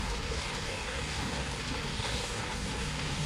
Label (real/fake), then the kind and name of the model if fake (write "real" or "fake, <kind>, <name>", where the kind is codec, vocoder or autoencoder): fake, codec, DAC